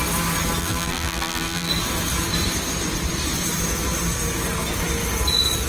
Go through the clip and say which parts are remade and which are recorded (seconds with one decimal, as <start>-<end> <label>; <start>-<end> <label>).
0.0-0.6 recorded; 0.6-1.7 remade; 1.7-5.7 recorded